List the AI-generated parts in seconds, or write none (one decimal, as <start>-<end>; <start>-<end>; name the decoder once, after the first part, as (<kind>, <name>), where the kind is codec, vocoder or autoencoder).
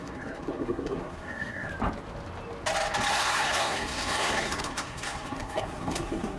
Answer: 0.0-1.7 (codec, SNAC); 3.1-6.4